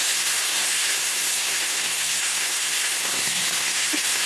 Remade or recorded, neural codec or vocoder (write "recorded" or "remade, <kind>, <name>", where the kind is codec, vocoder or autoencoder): remade, codec, SNAC